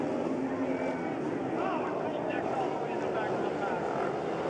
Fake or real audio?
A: real